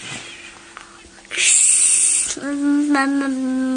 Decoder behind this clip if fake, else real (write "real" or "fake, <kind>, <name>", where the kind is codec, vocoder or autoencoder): real